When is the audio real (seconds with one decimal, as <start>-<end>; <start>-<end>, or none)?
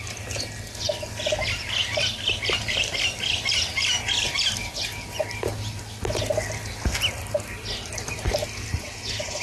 0.0-9.4